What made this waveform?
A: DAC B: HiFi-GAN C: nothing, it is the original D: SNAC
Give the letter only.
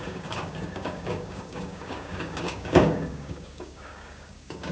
A